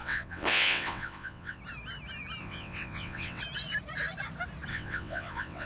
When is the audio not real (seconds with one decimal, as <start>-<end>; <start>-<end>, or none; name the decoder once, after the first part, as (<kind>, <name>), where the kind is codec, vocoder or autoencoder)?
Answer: 0.0-1.6 (vocoder, WaveNeXt); 2.4-3.4; 4.7-5.7